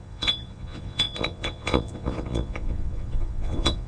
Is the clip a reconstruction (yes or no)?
yes